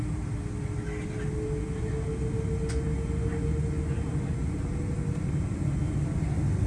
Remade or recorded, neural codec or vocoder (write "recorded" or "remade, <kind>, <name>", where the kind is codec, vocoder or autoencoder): recorded